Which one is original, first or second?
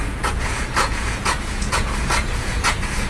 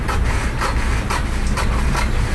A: second